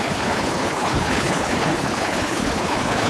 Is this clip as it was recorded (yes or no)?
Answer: no